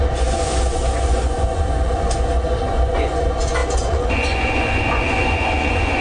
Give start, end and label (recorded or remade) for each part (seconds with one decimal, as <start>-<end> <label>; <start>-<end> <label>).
0.0-6.0 remade